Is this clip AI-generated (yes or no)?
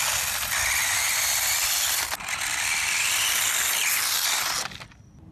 no